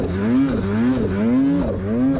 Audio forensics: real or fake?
real